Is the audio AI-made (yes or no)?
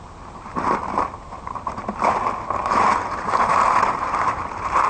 yes